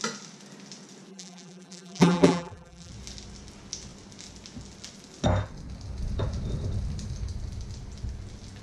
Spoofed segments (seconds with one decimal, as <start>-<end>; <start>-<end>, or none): 1.1-2.9